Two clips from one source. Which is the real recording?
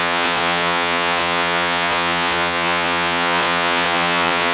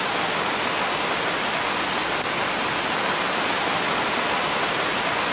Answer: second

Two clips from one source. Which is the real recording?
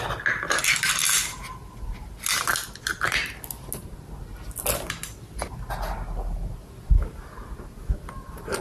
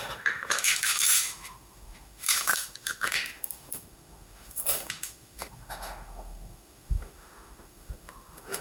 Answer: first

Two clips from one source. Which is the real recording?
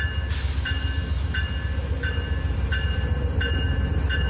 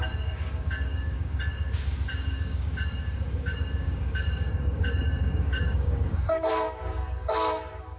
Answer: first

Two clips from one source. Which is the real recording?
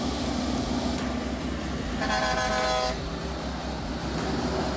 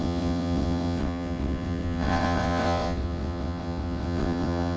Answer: first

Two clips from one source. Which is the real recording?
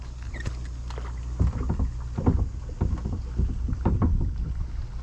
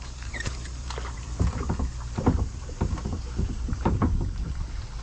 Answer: first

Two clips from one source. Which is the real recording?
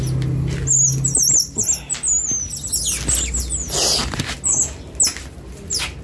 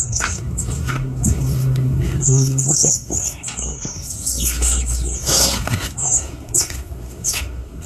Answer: first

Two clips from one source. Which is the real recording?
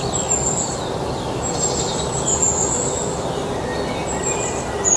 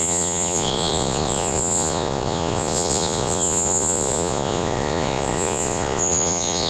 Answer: first